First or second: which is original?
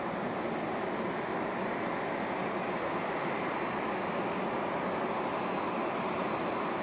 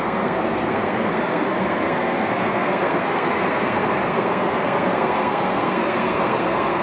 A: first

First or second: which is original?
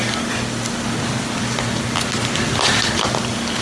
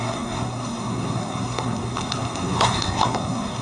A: first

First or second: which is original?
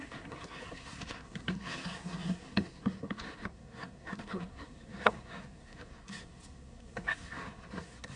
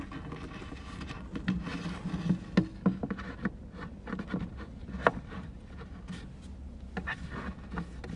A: second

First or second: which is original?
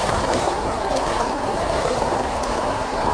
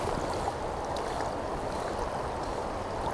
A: second